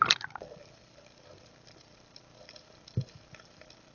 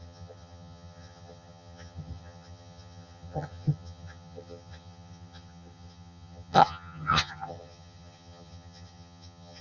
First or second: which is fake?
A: second